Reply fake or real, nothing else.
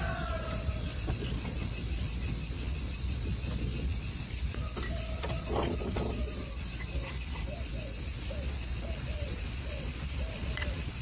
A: fake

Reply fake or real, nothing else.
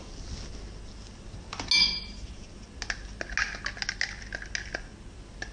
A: real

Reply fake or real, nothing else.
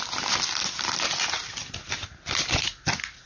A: real